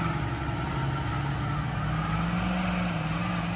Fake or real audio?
real